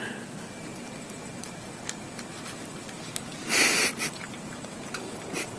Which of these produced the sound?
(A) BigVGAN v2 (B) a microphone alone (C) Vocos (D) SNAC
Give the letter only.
A